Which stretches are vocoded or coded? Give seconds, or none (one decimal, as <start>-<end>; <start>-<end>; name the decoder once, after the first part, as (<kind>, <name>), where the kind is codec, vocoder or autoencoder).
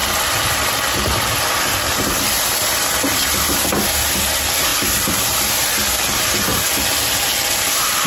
0.0-0.7 (vocoder, BigVGAN v2); 4.7-5.9; 6.5-8.1